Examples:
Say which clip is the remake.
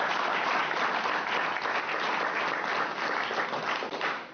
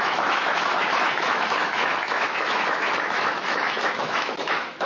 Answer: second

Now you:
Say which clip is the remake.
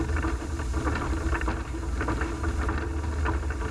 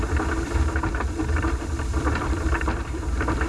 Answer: second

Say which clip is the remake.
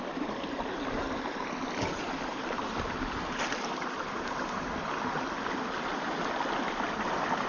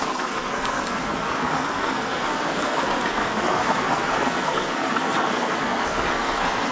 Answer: second